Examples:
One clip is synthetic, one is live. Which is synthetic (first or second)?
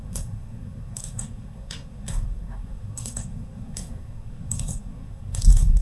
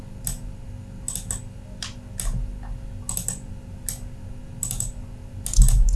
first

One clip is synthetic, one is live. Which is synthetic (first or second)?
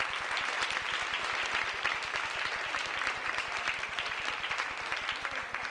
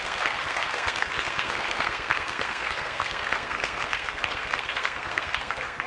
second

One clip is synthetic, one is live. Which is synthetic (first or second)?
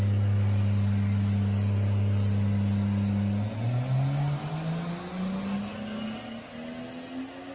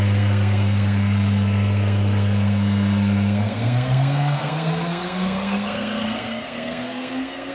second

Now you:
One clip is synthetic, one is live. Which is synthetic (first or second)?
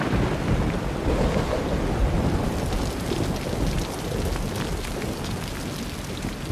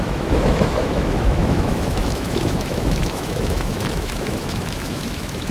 second